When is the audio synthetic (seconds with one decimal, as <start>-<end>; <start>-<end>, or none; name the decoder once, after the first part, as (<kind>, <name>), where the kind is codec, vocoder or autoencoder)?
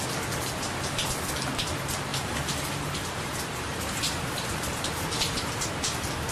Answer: 2.1-5.7 (vocoder, BigVGAN v2)